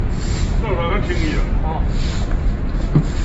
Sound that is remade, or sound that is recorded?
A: recorded